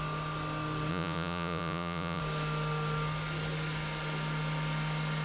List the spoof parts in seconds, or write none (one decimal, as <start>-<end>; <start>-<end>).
0.9-2.2